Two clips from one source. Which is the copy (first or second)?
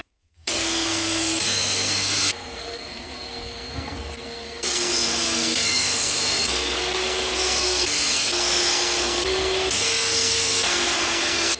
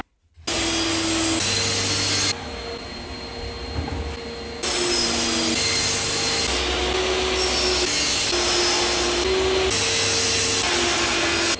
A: first